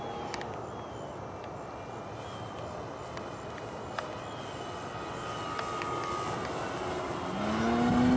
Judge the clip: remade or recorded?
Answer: recorded